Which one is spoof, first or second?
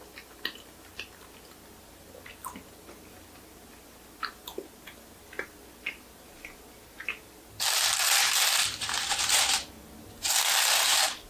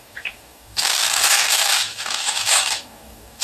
second